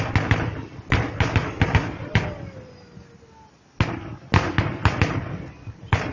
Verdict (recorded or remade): recorded